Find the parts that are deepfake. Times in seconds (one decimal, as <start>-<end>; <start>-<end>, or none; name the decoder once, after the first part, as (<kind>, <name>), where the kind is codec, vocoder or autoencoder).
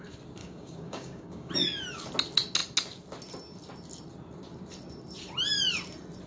0.4-1.5 (codec, DAC)